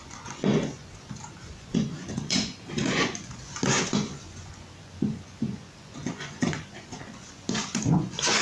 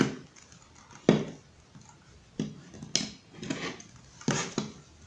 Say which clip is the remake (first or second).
first